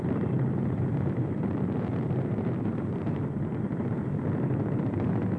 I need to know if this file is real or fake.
fake